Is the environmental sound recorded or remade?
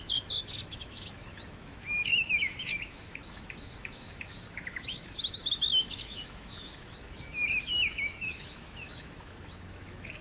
remade